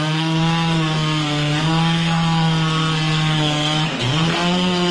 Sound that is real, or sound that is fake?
fake